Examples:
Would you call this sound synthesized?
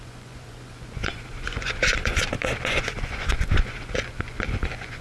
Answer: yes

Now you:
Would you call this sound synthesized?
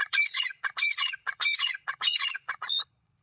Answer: yes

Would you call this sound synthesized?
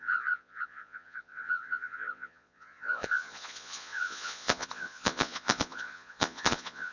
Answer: yes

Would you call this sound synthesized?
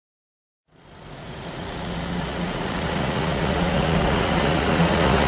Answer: yes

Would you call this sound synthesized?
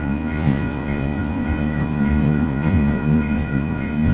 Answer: yes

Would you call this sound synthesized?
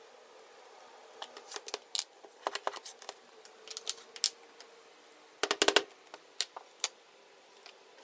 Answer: no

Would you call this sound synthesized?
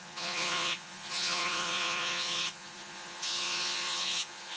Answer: yes